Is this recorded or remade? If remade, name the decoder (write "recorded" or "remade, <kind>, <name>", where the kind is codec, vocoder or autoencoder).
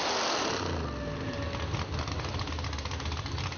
recorded